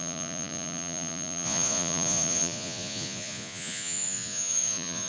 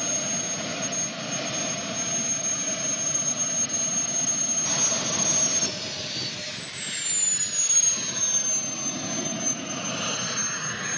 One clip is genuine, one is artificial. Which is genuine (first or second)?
second